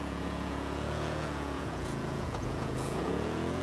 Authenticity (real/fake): fake